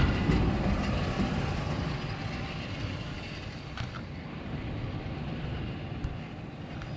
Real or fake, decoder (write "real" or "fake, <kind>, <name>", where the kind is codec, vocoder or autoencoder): real